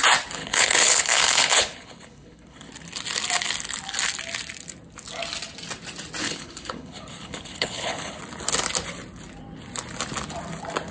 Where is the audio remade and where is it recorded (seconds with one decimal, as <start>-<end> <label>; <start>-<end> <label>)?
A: 0.0-0.4 recorded; 0.4-2.7 remade; 2.7-6.2 recorded; 6.2-8.2 remade; 8.2-10.9 recorded